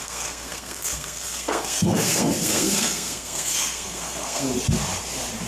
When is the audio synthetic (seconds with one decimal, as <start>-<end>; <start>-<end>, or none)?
0.0-4.5